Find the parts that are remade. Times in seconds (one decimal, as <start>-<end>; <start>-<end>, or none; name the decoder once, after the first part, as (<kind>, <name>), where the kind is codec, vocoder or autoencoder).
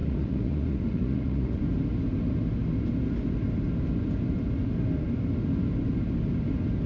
0.0-1.6 (vocoder, Vocos)